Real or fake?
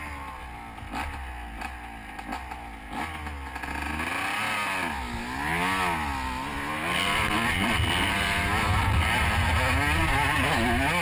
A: real